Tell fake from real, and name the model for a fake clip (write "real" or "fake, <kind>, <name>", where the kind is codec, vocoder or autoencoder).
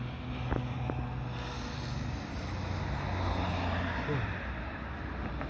real